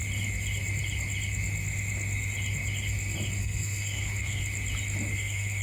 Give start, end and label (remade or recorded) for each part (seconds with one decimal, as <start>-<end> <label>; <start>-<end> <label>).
0.0-3.4 recorded; 3.4-4.4 remade; 4.4-5.1 recorded; 5.1-5.6 remade